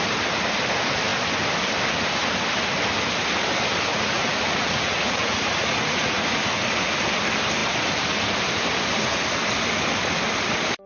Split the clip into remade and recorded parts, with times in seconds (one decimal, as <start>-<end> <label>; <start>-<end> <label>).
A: 0.0-3.9 recorded; 3.9-6.4 remade; 6.4-10.9 recorded